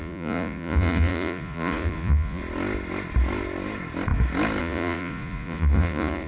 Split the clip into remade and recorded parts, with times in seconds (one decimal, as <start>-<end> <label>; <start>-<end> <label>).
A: 0.0-2.4 remade; 2.4-4.6 recorded; 4.6-6.3 remade